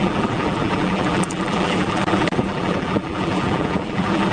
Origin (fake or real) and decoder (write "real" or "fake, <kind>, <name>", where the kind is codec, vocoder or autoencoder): fake, vocoder, BigVGAN v2